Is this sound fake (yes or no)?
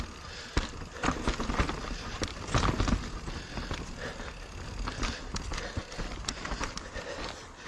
no